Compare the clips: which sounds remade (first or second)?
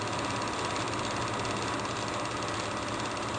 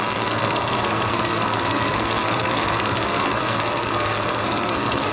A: second